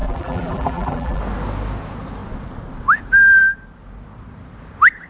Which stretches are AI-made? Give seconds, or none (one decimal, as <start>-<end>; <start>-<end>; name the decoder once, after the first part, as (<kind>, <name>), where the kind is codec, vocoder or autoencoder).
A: 0.0-1.2 (vocoder, BigVGAN v2)